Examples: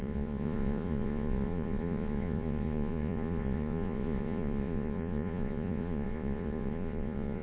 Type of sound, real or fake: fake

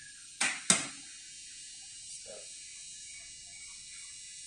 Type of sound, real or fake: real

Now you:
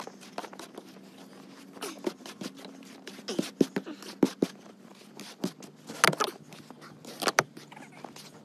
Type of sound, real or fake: real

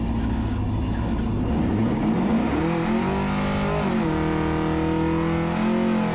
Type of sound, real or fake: real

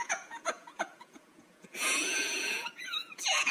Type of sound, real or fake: fake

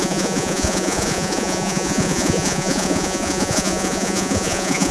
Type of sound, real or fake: fake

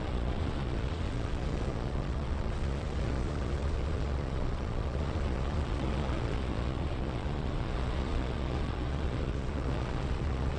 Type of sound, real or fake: fake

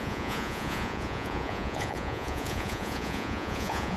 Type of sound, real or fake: fake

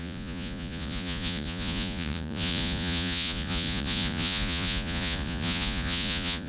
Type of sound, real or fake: fake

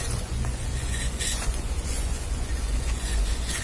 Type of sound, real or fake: fake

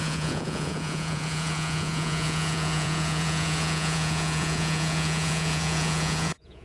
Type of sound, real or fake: fake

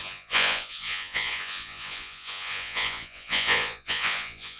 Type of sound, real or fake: fake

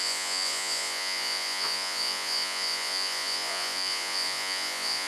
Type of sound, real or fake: fake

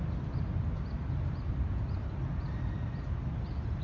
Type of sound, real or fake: real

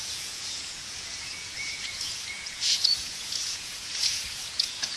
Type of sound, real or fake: fake